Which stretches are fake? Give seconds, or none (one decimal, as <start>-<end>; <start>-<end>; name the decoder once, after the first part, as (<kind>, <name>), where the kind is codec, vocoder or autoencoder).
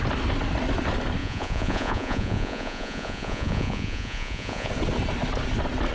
1.2-4.7 (vocoder, Vocos)